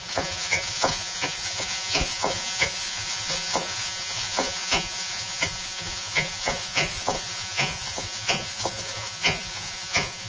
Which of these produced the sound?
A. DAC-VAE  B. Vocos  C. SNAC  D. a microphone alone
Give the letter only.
B